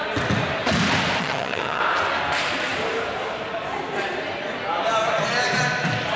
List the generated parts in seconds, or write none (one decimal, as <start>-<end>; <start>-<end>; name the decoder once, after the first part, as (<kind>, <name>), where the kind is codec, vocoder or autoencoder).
1.2-1.8 (vocoder, HiFi-GAN)